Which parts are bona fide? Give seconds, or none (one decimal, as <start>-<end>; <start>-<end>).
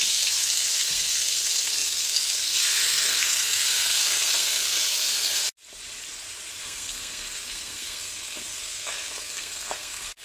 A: 5.4-6.6